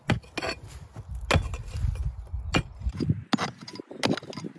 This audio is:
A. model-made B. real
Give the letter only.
B